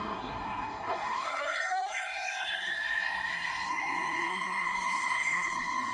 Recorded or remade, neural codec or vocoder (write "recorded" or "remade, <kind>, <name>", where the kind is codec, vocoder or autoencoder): remade, codec, SNAC